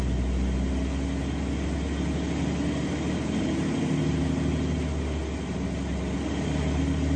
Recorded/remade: recorded